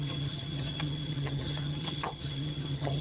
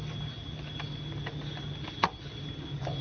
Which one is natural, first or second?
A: second